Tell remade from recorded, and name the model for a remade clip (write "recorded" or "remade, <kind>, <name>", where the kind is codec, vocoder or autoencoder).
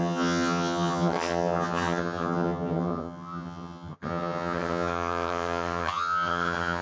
remade, vocoder, HiFi-GAN